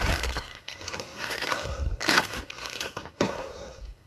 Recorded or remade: remade